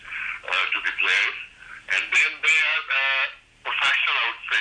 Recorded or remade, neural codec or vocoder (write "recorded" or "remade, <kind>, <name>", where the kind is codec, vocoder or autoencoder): recorded